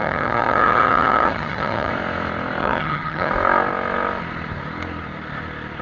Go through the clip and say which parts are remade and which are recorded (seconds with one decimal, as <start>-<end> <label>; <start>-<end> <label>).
0.0-1.9 remade; 1.9-2.6 recorded; 2.6-3.3 remade; 3.3-5.8 recorded